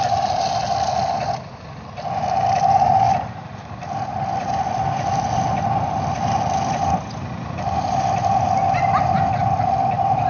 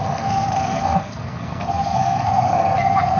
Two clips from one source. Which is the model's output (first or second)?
second